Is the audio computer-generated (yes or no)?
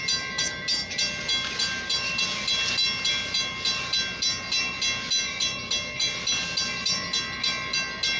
no